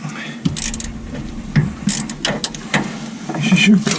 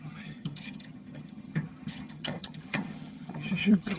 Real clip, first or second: first